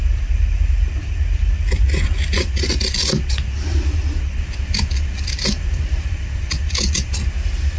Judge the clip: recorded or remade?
recorded